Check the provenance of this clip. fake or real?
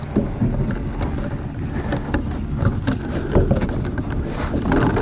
real